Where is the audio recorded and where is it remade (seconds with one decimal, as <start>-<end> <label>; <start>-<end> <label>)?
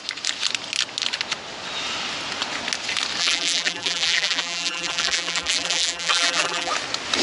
0.0-3.2 recorded; 3.2-6.7 remade; 6.7-7.2 recorded